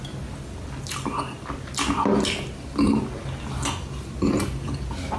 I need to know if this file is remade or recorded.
recorded